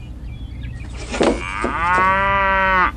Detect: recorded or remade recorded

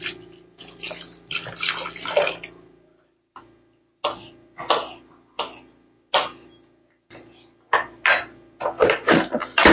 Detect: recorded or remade recorded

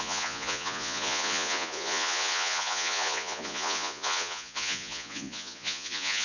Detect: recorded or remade remade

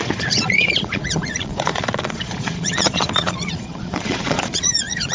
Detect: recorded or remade remade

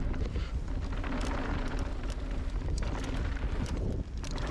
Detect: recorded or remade recorded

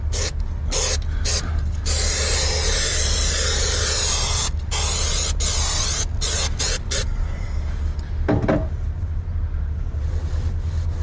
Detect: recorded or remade recorded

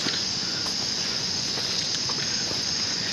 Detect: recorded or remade remade